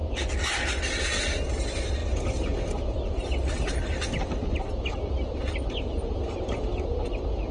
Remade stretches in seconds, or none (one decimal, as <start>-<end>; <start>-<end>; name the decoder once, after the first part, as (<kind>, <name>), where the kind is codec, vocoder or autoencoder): none